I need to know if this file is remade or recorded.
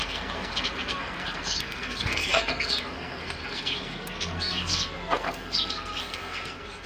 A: remade